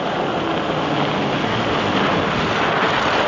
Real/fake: real